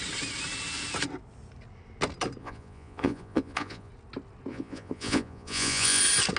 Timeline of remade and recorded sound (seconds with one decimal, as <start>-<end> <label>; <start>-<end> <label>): 0.0-2.4 recorded; 2.4-3.9 remade; 3.9-4.5 recorded; 4.5-6.0 remade; 6.0-6.4 recorded